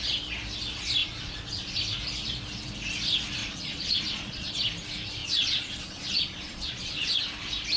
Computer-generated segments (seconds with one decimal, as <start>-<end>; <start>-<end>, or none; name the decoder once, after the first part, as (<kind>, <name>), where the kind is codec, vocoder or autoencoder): 1.0-1.8 (vocoder, Vocos); 3.4-4.5; 5.2-7.2